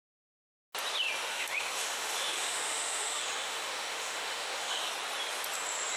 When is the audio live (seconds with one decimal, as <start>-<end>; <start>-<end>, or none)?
0.0-1.3; 4.9-6.0